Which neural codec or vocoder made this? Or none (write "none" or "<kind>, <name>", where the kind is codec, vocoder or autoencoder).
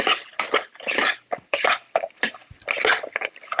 vocoder, BigVGAN v2